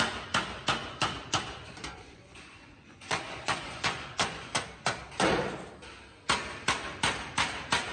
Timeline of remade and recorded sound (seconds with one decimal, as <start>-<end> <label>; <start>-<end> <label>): 0.0-0.8 recorded; 0.8-4.7 remade; 4.7-7.9 recorded